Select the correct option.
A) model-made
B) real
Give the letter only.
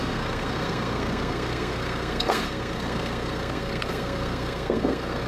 A